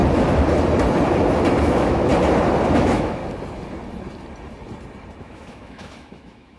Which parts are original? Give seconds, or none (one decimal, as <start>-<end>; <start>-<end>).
0.0-1.6; 2.1-2.8; 3.2-5.2